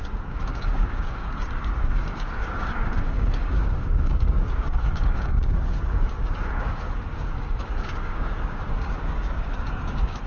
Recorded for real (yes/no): no